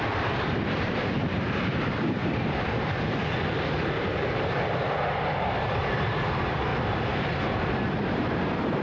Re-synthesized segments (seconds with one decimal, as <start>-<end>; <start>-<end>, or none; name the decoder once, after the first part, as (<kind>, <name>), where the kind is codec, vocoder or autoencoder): 0.0-2.2 (vocoder, BigVGAN v2); 5.1-6.7; 7.9-8.8